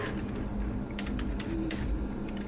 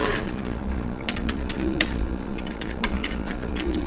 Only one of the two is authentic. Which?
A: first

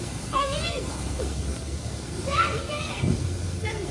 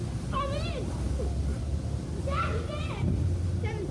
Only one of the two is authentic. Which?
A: second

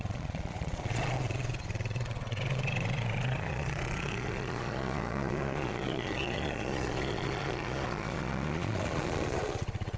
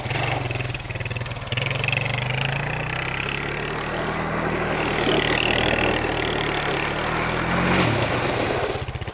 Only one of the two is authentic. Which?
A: second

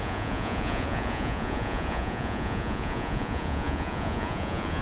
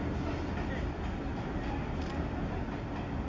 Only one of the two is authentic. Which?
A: second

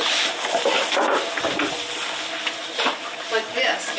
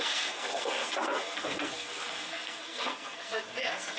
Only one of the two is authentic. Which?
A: first